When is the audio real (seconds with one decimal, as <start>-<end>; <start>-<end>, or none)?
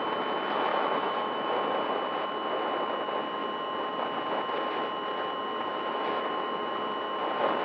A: 0.0-0.7; 1.5-5.7; 6.7-7.6